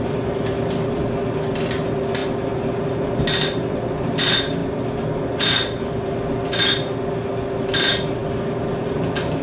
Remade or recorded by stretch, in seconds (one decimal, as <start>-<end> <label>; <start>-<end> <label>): 0.0-9.4 recorded